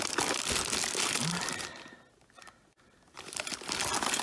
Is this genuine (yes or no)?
yes